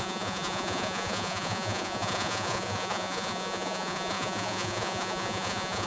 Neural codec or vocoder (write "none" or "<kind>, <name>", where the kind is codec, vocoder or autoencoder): vocoder, Vocos